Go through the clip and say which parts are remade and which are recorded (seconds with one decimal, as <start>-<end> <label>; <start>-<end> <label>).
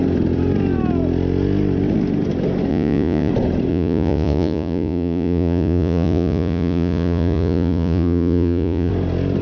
0.0-2.7 recorded; 2.7-3.3 remade; 3.3-3.7 recorded; 3.7-8.9 remade; 8.9-9.4 recorded